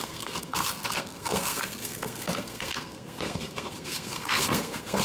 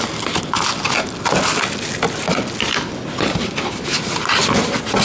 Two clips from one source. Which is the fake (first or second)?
first